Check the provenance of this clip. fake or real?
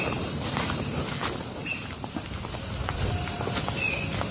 real